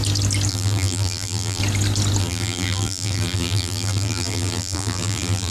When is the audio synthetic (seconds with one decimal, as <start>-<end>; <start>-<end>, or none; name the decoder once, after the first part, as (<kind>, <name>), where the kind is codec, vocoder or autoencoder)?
0.5-1.6 (vocoder, BigVGAN v2); 2.2-5.5